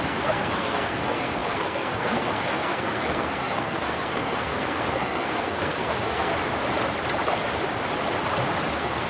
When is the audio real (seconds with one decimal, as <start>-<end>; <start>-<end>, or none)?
6.3-8.7